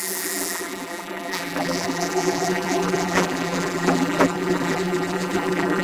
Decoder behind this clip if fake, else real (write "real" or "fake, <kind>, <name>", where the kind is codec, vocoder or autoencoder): fake, vocoder, BigVGAN v2